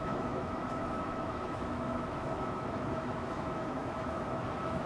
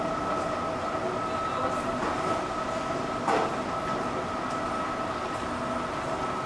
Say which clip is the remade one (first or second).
first